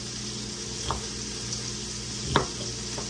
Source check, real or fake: real